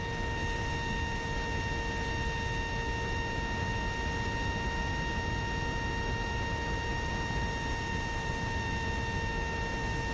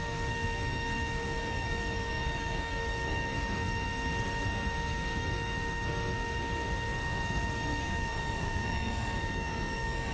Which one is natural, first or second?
first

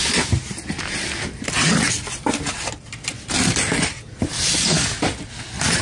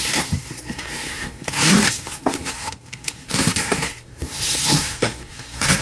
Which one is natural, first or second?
first